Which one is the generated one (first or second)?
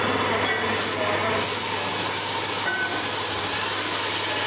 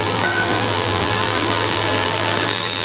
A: second